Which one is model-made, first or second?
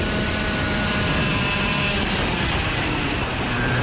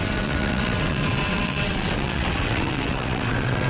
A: second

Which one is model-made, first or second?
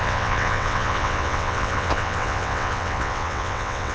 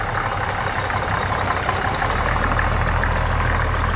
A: first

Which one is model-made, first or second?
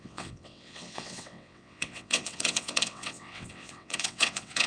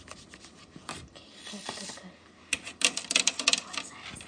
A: first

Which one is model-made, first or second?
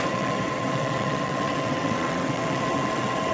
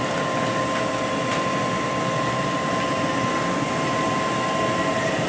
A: first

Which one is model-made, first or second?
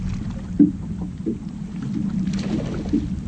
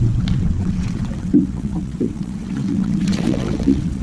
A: second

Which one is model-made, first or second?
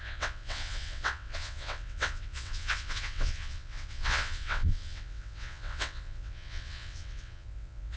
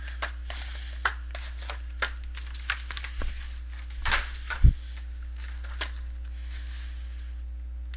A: first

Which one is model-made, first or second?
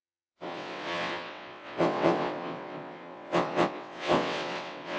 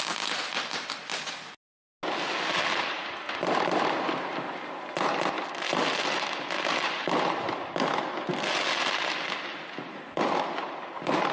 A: first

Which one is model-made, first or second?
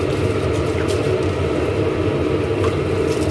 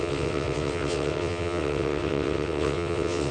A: second